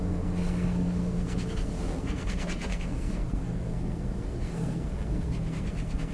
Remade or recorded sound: remade